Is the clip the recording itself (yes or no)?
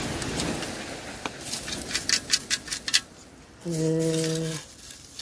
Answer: yes